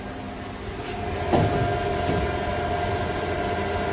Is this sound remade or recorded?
recorded